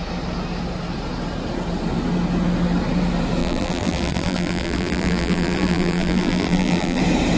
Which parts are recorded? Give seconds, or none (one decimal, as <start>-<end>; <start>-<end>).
0.0-3.4; 7.0-7.4